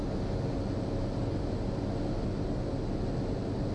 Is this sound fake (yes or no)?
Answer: no